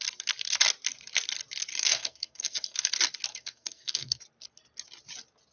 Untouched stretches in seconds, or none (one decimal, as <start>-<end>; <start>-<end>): 0.0-1.7; 2.9-3.3; 4.2-5.5

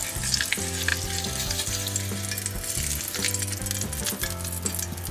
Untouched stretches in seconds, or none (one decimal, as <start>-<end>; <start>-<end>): 0.0-5.1

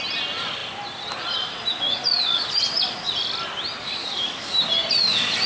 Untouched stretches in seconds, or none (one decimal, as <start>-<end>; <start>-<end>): 0.0-4.0; 4.5-5.5

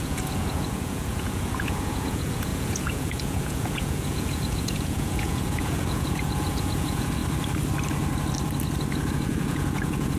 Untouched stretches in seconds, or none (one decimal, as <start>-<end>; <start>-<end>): 7.2-9.1

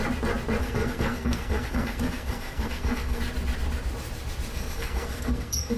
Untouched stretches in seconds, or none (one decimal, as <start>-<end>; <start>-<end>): 0.0-0.6; 3.2-4.5

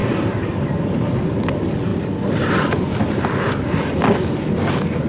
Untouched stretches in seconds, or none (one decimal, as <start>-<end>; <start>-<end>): 0.0-0.7

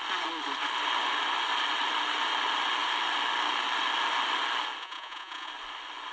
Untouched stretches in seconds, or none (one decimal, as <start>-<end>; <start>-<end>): 0.0-4.8; 5.5-6.1